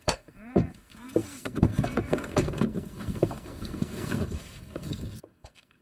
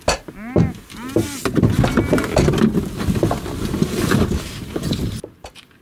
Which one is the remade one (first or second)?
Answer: first